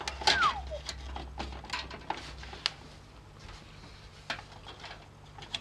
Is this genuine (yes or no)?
yes